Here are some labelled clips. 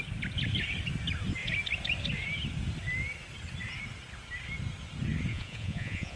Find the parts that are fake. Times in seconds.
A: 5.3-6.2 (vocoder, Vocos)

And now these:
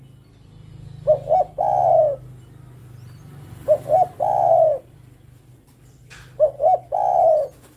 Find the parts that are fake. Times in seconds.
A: none

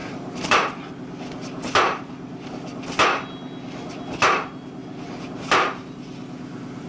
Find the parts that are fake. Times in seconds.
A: 0.0-0.6 (vocoder, BigVGAN v2)

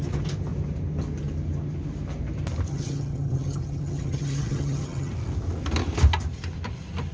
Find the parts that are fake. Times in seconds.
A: 2.7-5.1 (vocoder, HiFi-GAN)

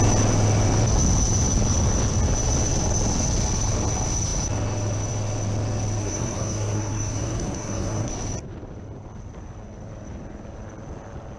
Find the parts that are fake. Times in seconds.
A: 6.0-8.1 (codec, SNAC)

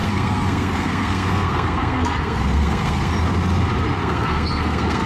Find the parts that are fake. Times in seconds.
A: 0.0-3.1 (codec, SNAC); 4.0-5.1